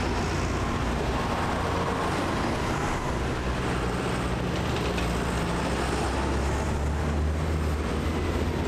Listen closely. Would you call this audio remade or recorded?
recorded